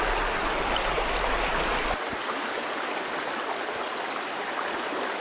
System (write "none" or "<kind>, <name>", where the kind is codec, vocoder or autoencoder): none